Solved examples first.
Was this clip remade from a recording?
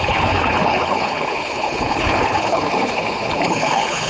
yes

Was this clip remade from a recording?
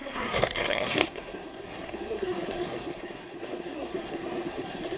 yes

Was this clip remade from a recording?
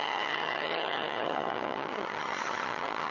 yes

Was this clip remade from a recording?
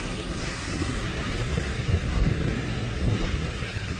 yes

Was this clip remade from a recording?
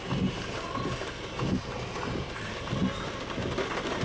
no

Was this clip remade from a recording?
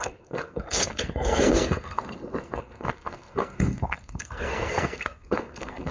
yes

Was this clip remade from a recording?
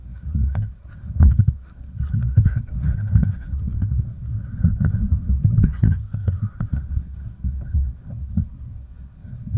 yes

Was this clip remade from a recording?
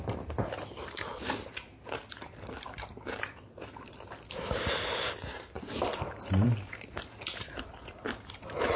yes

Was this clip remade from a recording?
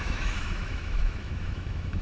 yes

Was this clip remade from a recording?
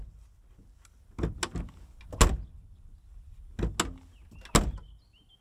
no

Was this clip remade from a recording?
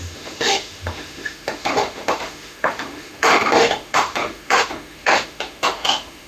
yes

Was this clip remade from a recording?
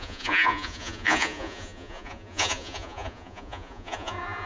yes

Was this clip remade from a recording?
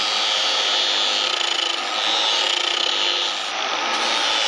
no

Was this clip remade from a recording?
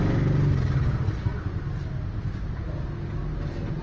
no